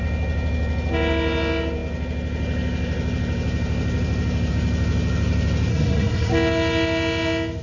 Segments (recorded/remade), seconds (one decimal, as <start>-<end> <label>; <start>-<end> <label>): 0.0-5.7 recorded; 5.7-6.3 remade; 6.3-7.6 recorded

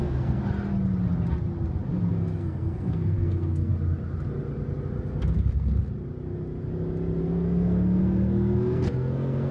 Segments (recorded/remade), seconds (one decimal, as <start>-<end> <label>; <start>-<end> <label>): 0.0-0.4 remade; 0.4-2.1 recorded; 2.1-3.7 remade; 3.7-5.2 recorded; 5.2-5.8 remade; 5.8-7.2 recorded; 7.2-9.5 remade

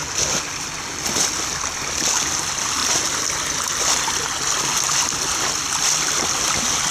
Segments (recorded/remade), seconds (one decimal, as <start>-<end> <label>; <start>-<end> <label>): 0.0-6.9 recorded

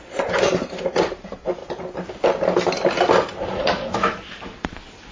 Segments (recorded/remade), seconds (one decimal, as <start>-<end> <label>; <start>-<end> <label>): 0.0-1.6 remade; 1.6-3.6 recorded; 3.6-5.1 remade